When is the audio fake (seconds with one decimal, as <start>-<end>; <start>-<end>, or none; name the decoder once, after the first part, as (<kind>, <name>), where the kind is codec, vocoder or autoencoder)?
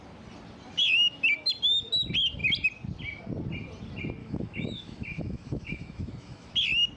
4.2-6.5 (autoencoder, DAC-VAE)